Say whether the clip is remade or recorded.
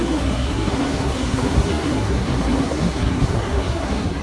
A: remade